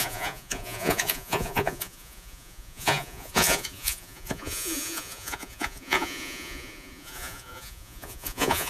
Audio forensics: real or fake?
fake